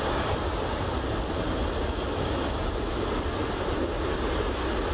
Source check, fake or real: real